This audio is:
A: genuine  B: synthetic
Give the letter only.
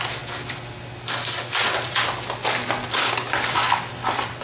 A